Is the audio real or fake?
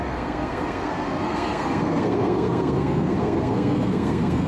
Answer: fake